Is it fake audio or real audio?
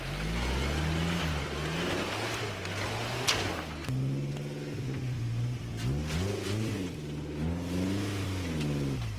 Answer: real